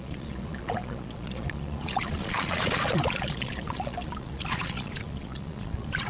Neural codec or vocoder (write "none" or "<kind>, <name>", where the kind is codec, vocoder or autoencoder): vocoder, Vocos